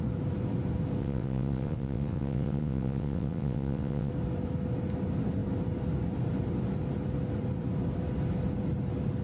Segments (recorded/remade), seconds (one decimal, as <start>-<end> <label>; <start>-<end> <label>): 0.0-1.0 recorded; 1.0-4.1 remade; 4.1-9.2 recorded